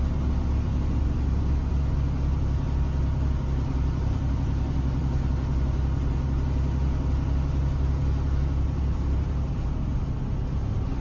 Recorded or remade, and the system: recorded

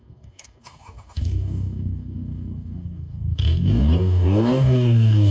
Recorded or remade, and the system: remade, codec, DAC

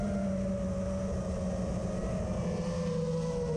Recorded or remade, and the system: recorded